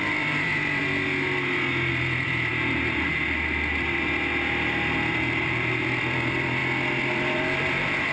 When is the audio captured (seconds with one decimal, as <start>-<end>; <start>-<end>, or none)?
0.8-1.9; 2.5-5.1; 6.6-7.1